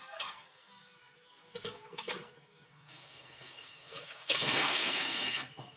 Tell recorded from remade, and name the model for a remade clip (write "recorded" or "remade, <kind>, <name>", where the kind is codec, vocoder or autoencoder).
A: remade, codec, SNAC